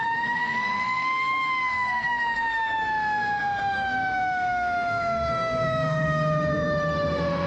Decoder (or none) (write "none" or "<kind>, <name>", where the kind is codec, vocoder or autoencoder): autoencoder, DAC-VAE